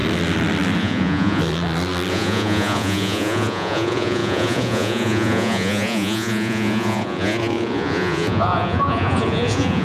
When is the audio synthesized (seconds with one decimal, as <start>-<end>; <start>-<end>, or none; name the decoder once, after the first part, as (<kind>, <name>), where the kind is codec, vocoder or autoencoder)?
0.8-1.4 (vocoder, Vocos); 2.1-9.8